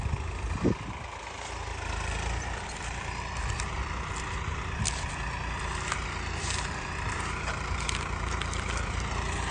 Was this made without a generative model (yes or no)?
yes